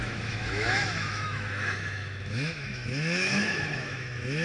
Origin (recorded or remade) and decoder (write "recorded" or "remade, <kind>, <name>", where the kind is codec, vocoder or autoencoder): remade, autoencoder, DAC-VAE